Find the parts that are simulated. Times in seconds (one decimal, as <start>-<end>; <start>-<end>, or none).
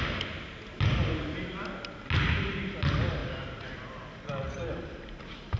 3.2-5.0